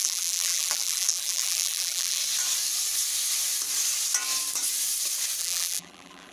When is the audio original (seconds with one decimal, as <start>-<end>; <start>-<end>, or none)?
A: 2.2-5.4